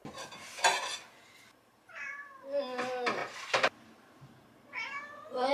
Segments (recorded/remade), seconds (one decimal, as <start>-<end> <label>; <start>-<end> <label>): 0.0-5.5 recorded